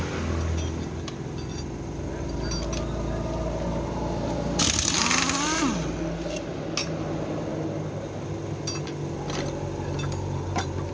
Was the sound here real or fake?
real